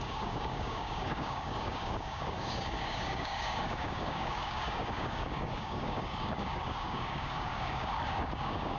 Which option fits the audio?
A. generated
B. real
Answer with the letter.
A